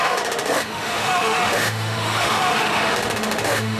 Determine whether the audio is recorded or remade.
remade